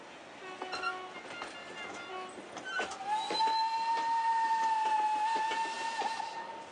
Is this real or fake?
real